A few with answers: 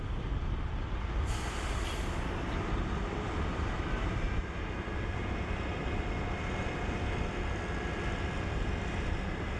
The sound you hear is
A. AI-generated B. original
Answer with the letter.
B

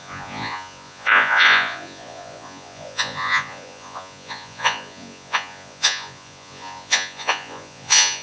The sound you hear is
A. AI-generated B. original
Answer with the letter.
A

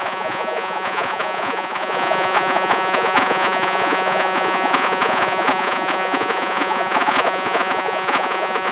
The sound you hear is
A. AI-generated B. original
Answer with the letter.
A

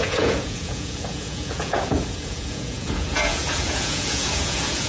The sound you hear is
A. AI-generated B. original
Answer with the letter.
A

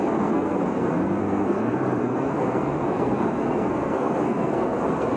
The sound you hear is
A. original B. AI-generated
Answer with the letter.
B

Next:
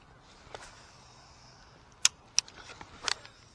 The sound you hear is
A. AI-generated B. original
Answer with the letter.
B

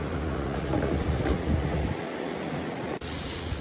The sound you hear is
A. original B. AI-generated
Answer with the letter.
B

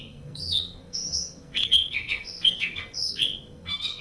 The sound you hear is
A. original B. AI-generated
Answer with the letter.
B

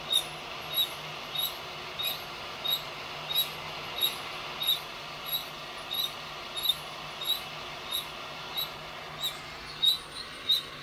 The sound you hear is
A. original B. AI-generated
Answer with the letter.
A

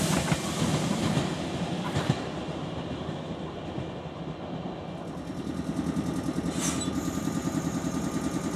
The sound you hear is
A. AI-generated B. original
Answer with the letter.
B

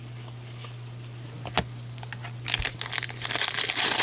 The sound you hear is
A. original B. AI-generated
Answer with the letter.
A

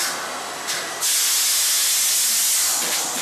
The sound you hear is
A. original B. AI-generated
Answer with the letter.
A